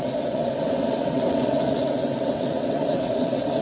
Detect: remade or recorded remade